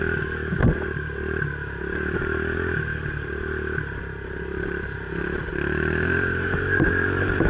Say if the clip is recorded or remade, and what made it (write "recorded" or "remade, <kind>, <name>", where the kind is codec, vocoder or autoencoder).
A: remade, vocoder, BigVGAN v2